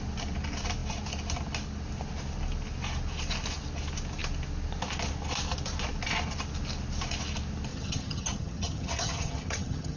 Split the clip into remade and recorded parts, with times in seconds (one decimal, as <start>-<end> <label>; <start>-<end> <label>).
0.0-7.7 recorded; 7.7-10.0 remade